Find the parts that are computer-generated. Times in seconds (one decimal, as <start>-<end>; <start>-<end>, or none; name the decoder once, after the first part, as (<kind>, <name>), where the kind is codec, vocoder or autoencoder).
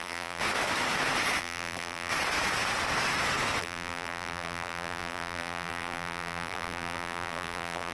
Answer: 0.0-0.4 (vocoder, BigVGAN v2); 1.4-2.1; 3.6-7.9